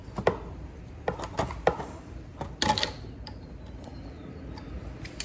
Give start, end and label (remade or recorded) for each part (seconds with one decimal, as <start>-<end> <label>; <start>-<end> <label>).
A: 0.0-3.9 recorded; 3.9-4.4 remade; 4.4-5.2 recorded